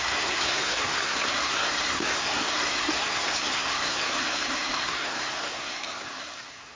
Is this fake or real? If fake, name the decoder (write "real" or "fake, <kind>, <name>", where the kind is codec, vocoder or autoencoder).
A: fake, codec, SNAC